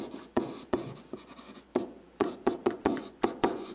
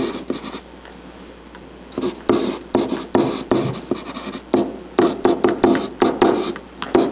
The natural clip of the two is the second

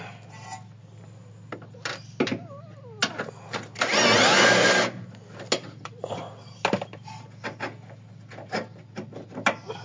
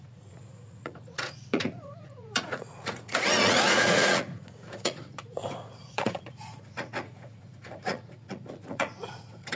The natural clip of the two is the first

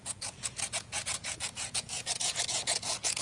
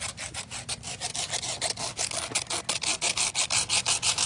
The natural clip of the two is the second